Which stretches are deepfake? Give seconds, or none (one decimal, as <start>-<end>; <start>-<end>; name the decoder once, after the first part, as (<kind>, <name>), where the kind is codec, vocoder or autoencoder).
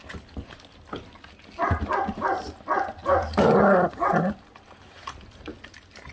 none